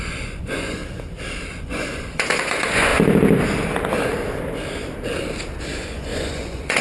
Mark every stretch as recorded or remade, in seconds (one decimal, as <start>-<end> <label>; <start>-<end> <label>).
0.0-0.8 remade; 0.8-1.5 recorded; 1.5-2.9 remade; 2.9-5.6 recorded; 5.6-6.8 remade